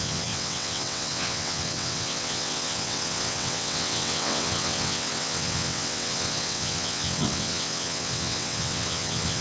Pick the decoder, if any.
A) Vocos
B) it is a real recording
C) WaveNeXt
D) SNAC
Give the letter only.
C